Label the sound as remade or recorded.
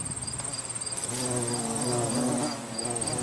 recorded